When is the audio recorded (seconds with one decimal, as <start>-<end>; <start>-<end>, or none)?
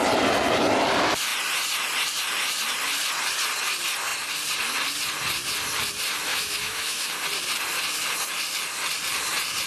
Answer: 0.0-6.3; 7.1-9.7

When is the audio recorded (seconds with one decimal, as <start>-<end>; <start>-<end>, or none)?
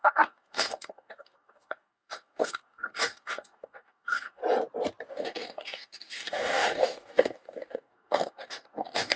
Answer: 4.4-5.1